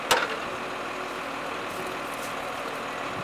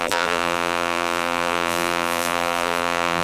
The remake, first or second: second